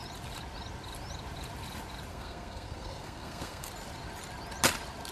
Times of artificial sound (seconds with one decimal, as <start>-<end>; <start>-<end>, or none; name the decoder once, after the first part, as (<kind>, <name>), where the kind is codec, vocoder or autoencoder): 2.1-3.7 (codec, SNAC)